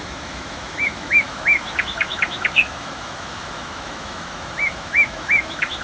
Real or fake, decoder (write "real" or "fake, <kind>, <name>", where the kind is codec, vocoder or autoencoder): fake, autoencoder, DAC-VAE